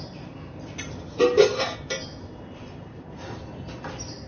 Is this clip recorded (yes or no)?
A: yes